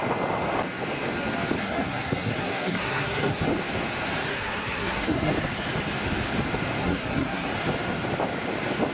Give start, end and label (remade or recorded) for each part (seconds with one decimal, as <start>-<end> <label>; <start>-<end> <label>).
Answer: 0.0-1.6 recorded; 1.6-3.5 remade; 3.5-4.3 recorded; 4.3-5.3 remade; 5.3-6.8 recorded; 6.8-7.5 remade; 7.5-8.9 recorded